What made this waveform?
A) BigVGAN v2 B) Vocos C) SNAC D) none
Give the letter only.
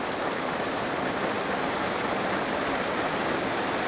D